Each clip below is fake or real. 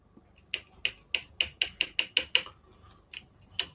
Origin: real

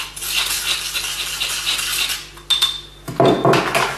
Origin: real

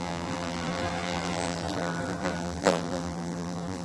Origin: fake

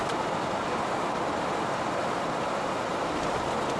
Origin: fake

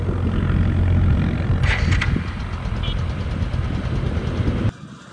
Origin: real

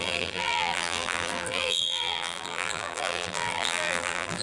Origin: fake